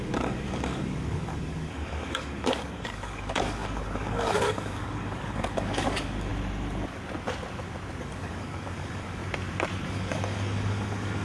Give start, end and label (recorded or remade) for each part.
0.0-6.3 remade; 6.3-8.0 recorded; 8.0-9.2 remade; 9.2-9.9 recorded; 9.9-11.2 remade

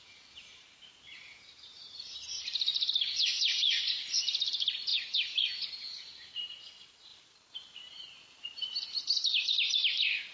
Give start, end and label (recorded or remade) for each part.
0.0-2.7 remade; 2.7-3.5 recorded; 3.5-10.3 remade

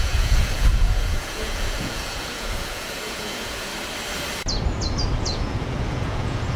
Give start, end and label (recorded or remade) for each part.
0.0-3.7 remade; 3.7-5.2 recorded; 5.2-6.6 remade

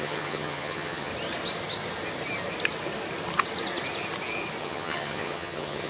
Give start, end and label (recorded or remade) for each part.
0.0-1.1 remade; 1.1-4.6 recorded; 4.6-5.9 remade

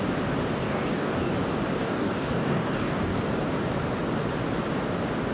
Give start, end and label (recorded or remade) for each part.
0.0-0.6 recorded; 0.6-1.3 remade; 1.3-1.8 recorded; 1.8-3.2 remade; 3.2-5.3 recorded

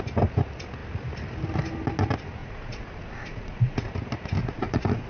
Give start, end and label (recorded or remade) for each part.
0.0-2.4 recorded; 2.4-3.9 remade; 3.9-4.4 recorded; 4.4-5.1 remade

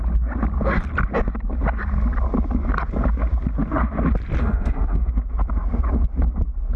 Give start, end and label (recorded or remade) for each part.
0.0-4.4 recorded; 4.4-5.1 remade; 5.1-6.8 recorded

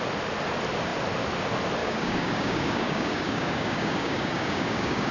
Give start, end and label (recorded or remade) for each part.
0.0-1.8 recorded; 1.8-5.1 remade